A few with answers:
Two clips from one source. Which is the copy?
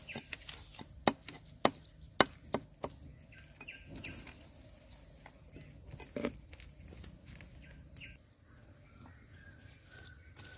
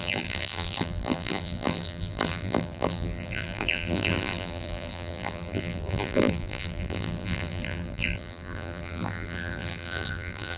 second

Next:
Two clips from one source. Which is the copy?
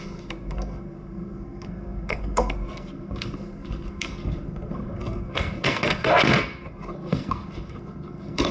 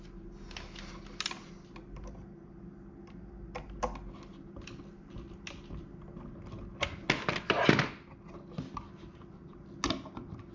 first